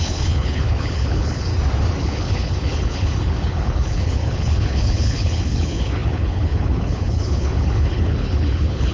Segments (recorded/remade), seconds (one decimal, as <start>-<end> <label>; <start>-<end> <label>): 0.0-1.5 remade; 1.5-2.0 recorded; 2.0-8.9 remade